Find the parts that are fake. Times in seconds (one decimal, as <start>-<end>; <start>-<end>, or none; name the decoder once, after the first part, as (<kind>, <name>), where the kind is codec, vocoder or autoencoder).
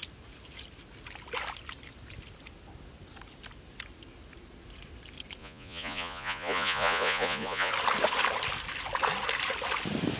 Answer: 5.4-7.7 (vocoder, Vocos)